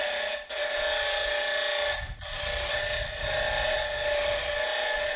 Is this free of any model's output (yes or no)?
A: yes